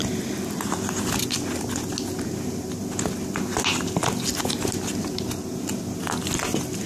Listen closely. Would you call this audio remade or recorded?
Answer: recorded